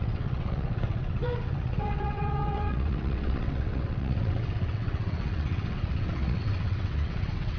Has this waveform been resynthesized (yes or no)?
yes